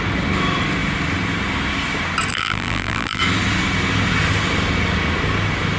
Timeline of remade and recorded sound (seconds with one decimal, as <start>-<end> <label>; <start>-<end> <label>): 0.0-2.3 recorded; 2.3-3.2 remade; 3.2-5.8 recorded